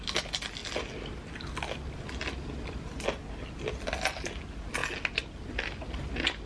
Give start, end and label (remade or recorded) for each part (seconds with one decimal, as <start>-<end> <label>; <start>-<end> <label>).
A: 0.0-6.5 recorded